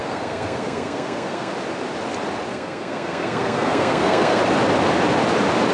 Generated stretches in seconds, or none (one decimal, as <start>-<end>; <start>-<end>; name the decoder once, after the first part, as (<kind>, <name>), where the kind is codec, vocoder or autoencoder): 0.0-1.5 (codec, SNAC); 2.5-4.4